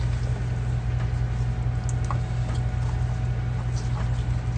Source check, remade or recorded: recorded